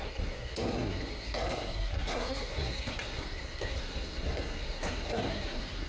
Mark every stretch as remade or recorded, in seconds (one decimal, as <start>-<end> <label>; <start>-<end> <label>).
0.0-5.9 remade

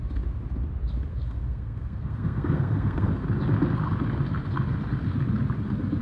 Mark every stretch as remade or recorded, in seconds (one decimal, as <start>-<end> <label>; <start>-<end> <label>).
0.0-1.1 recorded; 1.1-3.1 remade; 3.1-6.0 recorded